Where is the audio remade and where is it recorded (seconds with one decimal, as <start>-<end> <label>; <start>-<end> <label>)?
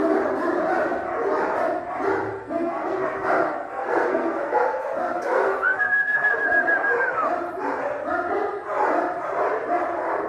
0.0-2.4 recorded; 2.4-6.4 remade; 6.4-10.3 recorded